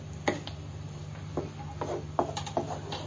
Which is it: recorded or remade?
recorded